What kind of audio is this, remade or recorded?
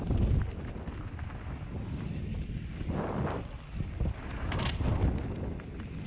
recorded